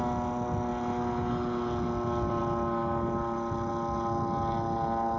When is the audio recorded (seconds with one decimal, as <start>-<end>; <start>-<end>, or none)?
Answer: 0.0-5.2